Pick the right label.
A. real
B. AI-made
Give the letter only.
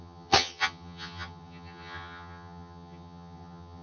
B